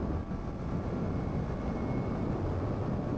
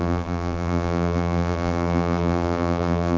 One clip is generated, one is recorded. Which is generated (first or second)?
second